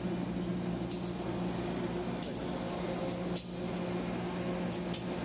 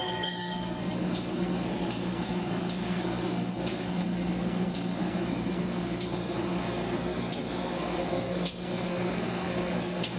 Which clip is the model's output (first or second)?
second